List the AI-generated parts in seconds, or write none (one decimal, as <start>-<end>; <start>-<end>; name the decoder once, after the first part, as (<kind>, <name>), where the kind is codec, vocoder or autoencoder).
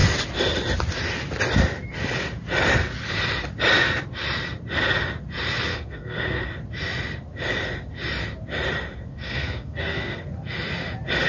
5.7-6.4 (codec, SNAC); 9.1-10.2